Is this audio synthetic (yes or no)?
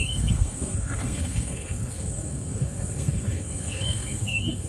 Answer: yes